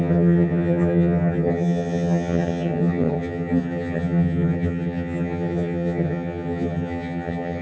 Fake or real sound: fake